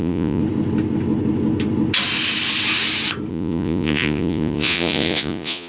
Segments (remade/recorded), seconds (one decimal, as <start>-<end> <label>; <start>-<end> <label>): 0.0-0.4 remade; 0.4-3.3 recorded; 3.3-5.7 remade